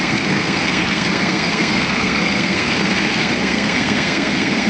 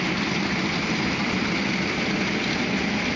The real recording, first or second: second